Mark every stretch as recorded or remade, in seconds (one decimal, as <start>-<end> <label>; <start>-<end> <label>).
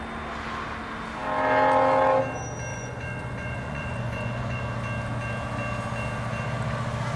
0.0-2.7 recorded; 2.7-4.6 remade; 4.6-7.2 recorded